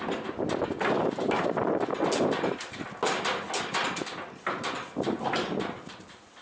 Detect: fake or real real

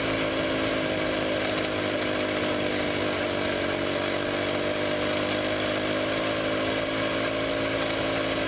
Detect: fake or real real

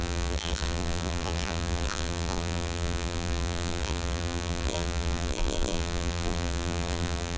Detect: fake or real fake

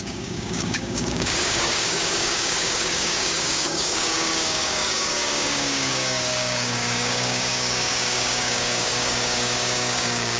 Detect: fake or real fake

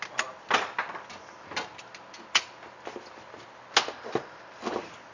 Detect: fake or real real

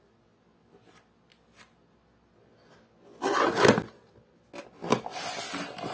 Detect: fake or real real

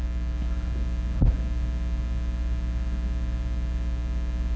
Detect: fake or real real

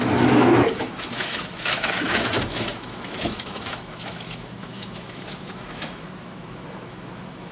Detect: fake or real fake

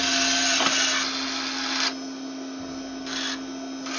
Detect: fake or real real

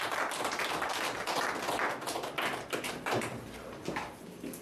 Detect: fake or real real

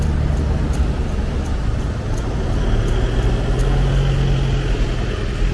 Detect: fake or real real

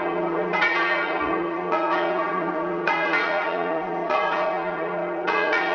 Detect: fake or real fake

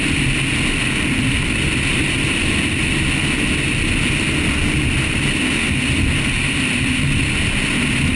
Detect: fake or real real